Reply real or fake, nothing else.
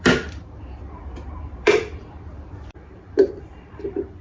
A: fake